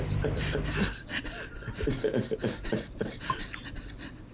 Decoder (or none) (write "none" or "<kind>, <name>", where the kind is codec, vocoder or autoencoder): none